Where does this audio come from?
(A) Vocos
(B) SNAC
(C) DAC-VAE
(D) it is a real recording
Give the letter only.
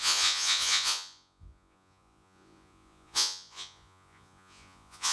A